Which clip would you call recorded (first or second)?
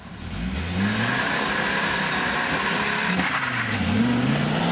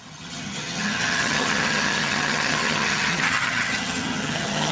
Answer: first